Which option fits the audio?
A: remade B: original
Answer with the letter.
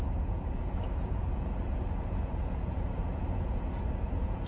A